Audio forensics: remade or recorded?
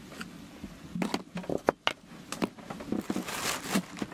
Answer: recorded